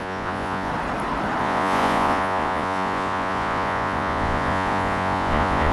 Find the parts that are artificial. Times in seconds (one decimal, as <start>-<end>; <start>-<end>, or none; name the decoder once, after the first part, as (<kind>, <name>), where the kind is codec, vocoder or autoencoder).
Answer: 0.0-0.7 (vocoder, Vocos); 1.4-5.7